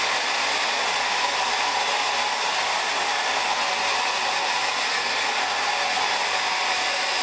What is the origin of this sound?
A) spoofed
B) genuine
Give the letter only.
B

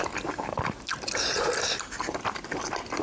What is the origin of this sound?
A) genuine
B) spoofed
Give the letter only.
A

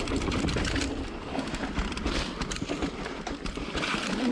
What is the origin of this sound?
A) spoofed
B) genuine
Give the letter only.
A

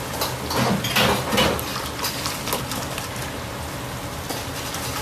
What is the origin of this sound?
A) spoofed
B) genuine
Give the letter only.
B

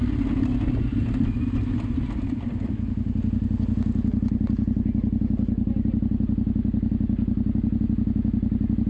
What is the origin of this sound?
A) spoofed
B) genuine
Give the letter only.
B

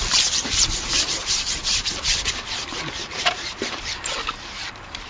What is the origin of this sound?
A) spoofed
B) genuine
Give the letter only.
A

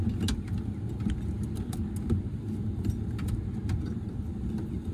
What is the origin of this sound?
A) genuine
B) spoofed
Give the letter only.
A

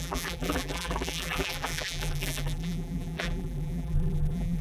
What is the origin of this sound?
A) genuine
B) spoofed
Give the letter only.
B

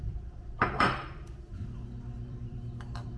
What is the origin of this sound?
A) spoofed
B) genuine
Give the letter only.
A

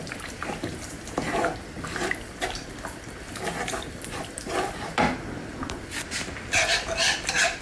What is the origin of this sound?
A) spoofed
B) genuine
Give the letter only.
A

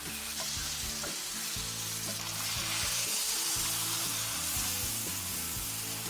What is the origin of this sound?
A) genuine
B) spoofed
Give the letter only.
B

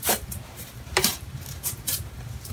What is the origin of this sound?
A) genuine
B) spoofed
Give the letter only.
B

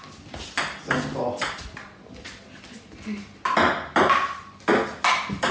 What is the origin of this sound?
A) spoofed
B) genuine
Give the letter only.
B